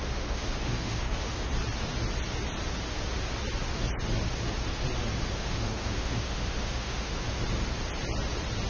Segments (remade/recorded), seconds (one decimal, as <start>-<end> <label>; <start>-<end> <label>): 0.0-1.5 remade; 1.5-5.2 recorded; 5.2-7.4 remade; 7.4-8.7 recorded